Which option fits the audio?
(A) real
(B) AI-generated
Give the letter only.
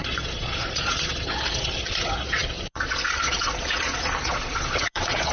B